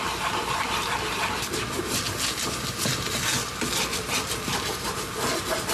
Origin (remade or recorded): recorded